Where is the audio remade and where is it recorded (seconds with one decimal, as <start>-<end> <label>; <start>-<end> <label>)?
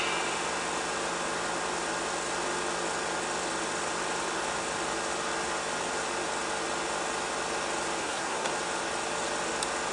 0.0-8.0 recorded; 8.0-8.5 remade; 8.5-9.9 recorded